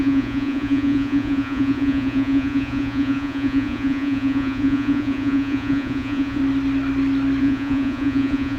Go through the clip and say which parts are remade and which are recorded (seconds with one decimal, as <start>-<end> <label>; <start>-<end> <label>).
0.0-6.4 remade; 6.4-7.4 recorded; 7.4-8.6 remade